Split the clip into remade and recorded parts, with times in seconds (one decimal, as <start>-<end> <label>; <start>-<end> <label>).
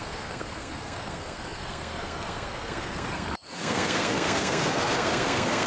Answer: 0.0-5.7 remade